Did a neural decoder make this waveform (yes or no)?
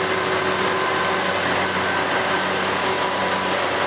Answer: no